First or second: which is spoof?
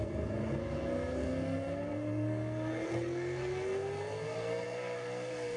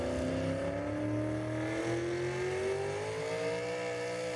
first